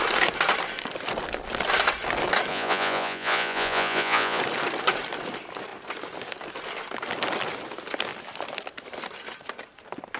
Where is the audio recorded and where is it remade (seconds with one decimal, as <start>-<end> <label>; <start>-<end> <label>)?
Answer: 0.0-2.5 recorded; 2.5-4.4 remade; 4.4-10.2 recorded